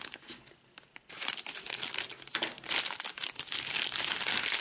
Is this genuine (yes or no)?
yes